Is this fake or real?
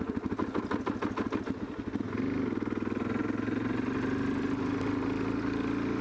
real